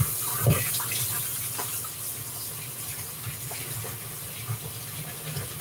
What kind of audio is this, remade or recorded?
recorded